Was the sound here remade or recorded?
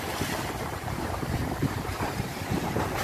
remade